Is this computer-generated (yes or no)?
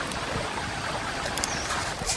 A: no